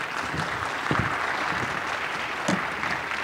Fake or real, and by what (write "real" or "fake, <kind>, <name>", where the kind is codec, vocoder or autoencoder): real